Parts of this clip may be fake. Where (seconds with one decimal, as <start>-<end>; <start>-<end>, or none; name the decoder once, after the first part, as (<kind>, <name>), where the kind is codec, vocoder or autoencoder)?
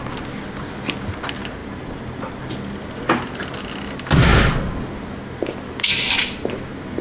1.6-2.4 (vocoder, BigVGAN v2)